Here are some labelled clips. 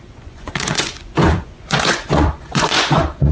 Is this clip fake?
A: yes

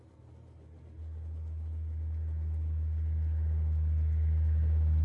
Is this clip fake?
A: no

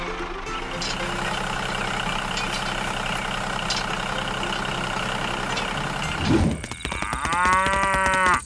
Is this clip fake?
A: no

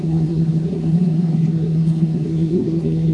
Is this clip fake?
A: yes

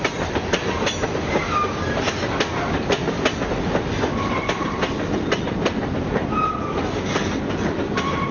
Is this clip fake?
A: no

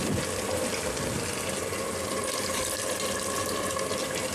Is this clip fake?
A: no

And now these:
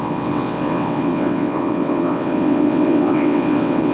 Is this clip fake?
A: yes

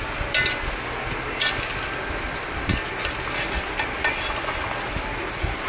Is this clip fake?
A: no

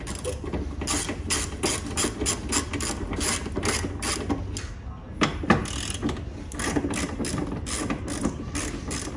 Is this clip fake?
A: no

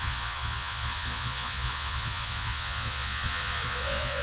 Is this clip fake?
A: yes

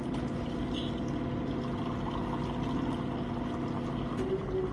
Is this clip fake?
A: no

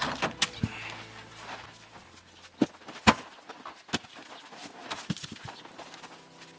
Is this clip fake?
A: no